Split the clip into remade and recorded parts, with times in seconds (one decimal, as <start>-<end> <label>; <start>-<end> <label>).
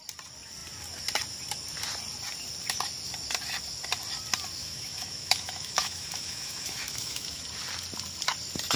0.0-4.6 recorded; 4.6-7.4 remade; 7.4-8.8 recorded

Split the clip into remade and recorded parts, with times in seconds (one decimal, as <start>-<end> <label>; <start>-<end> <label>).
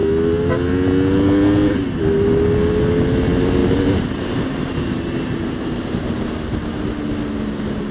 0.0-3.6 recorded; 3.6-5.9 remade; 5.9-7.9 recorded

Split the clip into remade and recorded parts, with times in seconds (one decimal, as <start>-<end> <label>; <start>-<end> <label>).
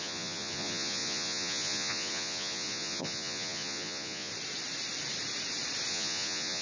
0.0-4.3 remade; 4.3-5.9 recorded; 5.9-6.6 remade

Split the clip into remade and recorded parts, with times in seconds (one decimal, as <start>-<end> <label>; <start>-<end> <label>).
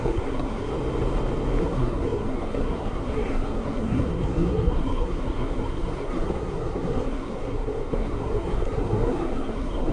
0.0-0.7 remade; 0.7-1.6 recorded; 1.6-9.9 remade